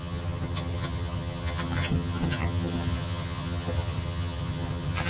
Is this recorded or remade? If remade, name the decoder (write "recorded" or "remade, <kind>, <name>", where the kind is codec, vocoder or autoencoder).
remade, vocoder, HiFi-GAN